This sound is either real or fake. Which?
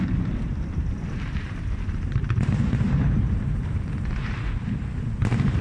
fake